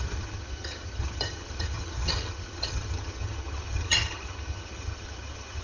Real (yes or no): no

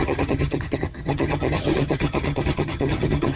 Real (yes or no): no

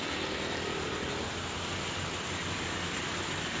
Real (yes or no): yes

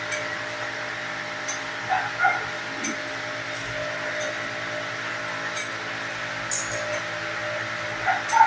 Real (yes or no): yes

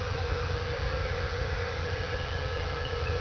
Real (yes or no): no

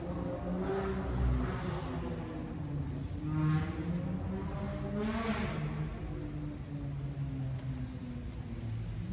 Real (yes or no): yes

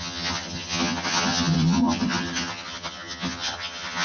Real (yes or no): no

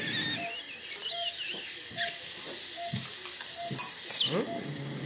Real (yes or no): yes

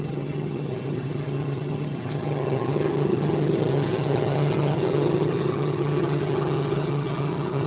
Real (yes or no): no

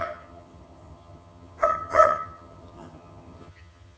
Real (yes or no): no